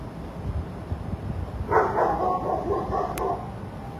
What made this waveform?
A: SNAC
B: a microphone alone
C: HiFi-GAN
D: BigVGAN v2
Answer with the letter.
B